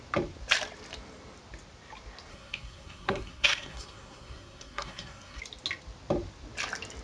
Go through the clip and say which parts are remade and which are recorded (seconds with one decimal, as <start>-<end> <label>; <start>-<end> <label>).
0.0-2.3 recorded; 2.3-5.4 remade; 5.4-7.0 recorded